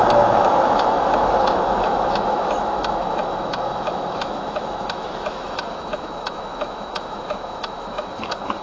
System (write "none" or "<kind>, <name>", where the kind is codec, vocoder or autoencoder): autoencoder, DAC-VAE